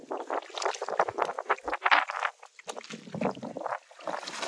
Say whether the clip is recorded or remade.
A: recorded